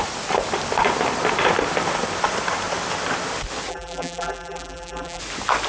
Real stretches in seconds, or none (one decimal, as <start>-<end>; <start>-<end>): 0.0-3.7; 5.2-5.7